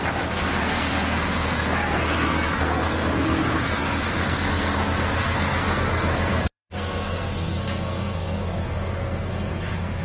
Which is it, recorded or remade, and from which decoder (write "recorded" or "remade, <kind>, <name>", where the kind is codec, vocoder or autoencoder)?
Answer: remade, codec, SNAC